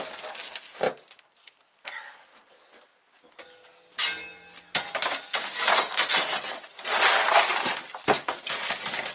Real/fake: real